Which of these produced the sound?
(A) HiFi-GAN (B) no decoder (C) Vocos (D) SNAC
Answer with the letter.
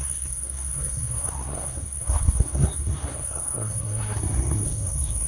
D